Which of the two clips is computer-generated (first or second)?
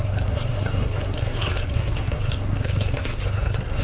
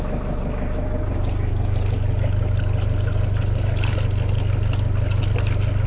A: first